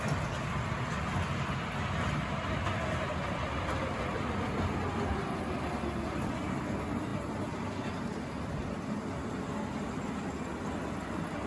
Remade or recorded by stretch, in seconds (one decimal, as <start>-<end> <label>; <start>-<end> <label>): 0.0-11.5 recorded